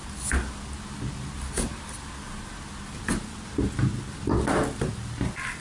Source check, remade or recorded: recorded